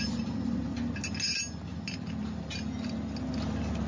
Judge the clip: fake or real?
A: real